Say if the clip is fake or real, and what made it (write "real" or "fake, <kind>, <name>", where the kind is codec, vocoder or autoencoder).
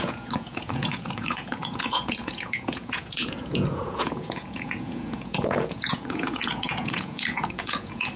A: fake, vocoder, Vocos